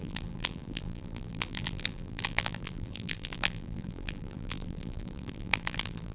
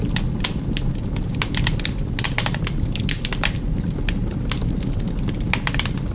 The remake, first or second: first